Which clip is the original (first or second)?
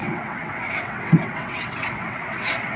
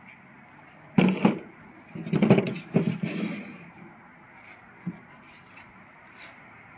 second